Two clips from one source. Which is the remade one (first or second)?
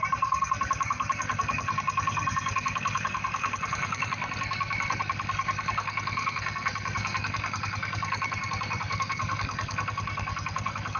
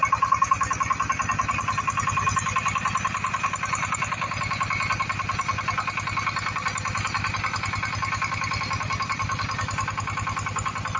first